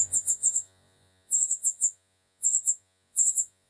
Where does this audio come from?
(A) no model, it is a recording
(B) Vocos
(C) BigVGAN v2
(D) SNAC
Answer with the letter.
B